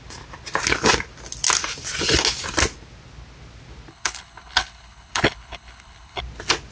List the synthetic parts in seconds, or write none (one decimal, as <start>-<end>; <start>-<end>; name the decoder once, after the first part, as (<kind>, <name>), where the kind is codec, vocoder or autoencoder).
3.9-6.2 (codec, HILCodec)